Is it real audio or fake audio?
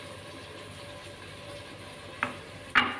real